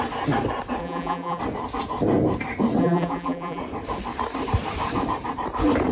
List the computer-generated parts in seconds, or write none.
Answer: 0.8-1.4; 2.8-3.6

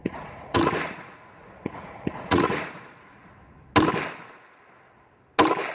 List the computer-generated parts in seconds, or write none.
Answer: 0.0-3.3

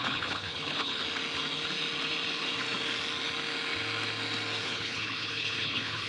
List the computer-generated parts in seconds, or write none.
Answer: 0.0-1.0; 4.6-6.1

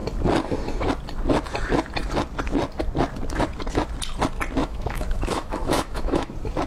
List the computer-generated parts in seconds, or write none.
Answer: 4.6-6.3

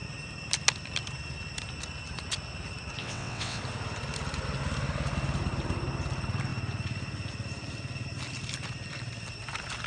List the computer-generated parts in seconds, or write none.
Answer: 3.0-3.6